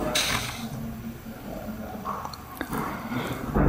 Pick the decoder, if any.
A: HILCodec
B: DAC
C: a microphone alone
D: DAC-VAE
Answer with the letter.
C